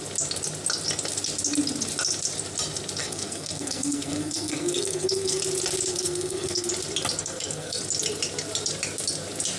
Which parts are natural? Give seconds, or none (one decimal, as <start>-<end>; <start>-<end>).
0.0-3.0; 5.4-5.9; 6.7-7.2; 7.8-9.6